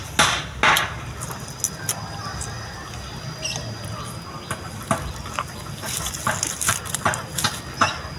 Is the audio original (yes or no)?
yes